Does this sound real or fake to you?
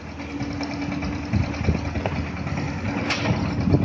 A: real